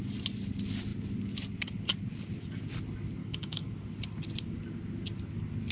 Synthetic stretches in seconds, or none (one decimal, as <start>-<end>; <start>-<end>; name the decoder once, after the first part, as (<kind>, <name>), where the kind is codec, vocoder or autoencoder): 3.2-3.7 (codec, DAC)